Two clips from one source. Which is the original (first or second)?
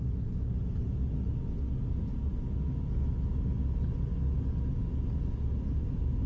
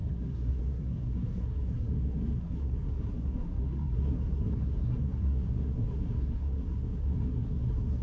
first